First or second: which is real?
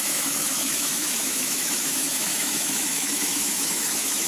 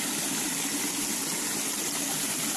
second